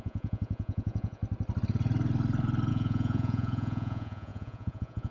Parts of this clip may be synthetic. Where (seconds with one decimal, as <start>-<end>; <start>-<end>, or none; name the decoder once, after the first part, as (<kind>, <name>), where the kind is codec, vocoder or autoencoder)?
0.0-1.2 (vocoder, Vocos); 2.7-5.1